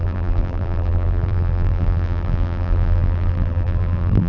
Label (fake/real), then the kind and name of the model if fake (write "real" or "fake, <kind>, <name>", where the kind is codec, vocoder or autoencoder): fake, vocoder, BigVGAN v2